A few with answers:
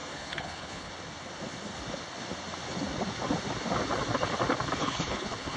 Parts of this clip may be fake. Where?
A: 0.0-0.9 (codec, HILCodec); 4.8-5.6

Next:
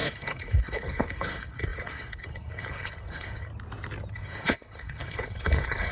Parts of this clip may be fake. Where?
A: 0.0-3.5 (codec, HILCodec); 4.1-5.9

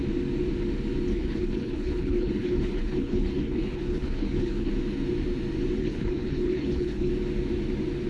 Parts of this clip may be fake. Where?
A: 1.1-4.7 (codec, HILCodec); 5.8-7.1

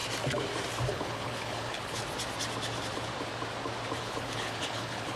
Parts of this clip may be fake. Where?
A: 0.9-2.0 (codec, HILCodec); 4.0-5.2

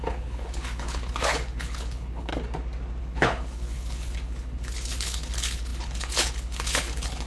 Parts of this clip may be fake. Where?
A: 0.0-2.3 (codec, HILCodec); 3.0-7.3

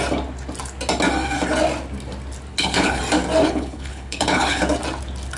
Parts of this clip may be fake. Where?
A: 2.5-3.0 (codec, HILCodec); 3.4-4.6

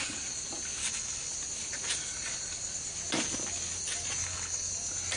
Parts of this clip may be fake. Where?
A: 0.8-1.3 (codec, HILCodec); 4.2-4.7